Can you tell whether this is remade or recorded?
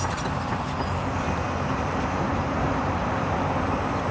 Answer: remade